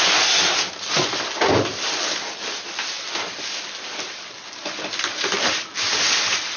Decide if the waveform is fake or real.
real